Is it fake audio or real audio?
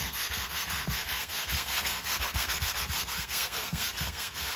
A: fake